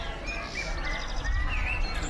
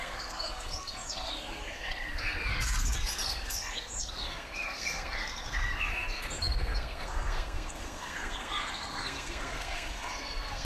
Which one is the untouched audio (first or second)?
first